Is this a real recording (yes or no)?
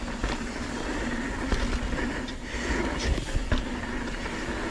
yes